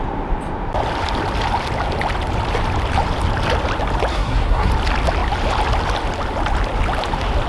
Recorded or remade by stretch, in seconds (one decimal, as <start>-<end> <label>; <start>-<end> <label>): 0.0-4.1 recorded; 4.1-4.7 remade; 4.7-7.5 recorded